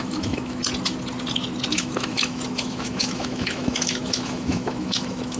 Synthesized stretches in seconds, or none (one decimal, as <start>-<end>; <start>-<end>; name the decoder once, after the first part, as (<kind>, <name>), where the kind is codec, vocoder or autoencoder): 0.0-0.6 (autoencoder, DAC-VAE); 1.7-5.4